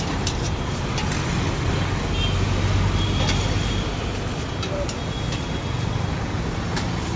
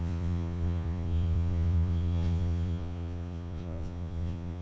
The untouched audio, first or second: first